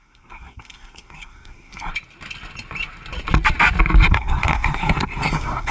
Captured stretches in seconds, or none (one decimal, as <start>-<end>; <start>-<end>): 1.9-4.1